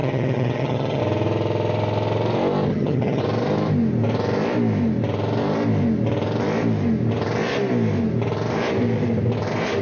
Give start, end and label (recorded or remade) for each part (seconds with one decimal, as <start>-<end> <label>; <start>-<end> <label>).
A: 0.0-1.0 remade; 1.0-2.7 recorded; 2.7-3.2 remade; 3.2-9.8 recorded